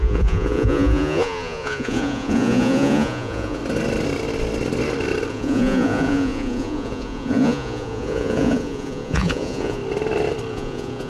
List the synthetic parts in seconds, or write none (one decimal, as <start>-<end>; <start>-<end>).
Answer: 0.0-3.6; 5.3-9.8; 10.5-11.1